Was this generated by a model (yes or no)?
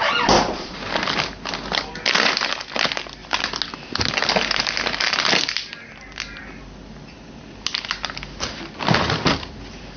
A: no